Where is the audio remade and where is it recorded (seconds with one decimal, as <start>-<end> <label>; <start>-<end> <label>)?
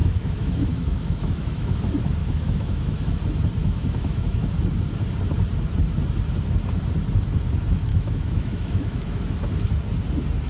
0.0-1.8 remade; 1.8-2.2 recorded; 2.2-3.2 remade; 3.2-3.6 recorded; 3.6-4.5 remade; 4.5-7.9 recorded; 7.9-9.2 remade; 9.2-10.5 recorded